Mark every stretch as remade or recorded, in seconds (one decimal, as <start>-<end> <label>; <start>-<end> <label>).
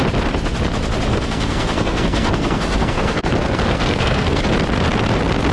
0.0-1.1 recorded; 1.1-4.4 remade; 4.4-5.5 recorded